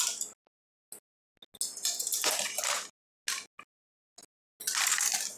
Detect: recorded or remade recorded